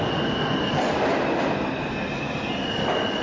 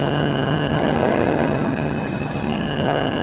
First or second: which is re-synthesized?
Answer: second